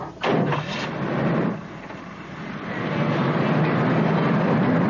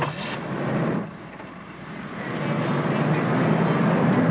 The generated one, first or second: first